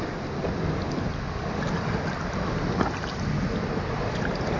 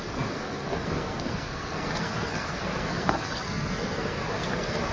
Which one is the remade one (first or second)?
second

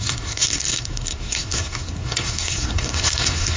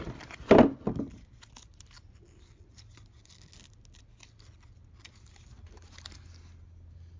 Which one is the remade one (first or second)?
first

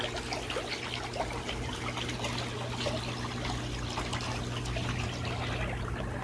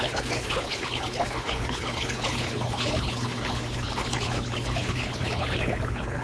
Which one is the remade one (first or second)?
second